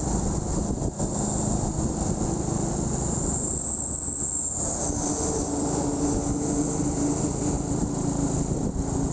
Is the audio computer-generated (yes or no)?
no